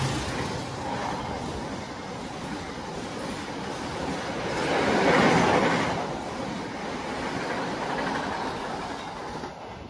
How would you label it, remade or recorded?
recorded